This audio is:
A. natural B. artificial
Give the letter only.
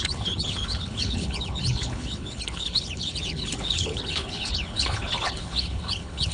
B